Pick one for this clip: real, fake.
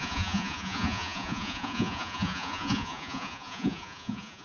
fake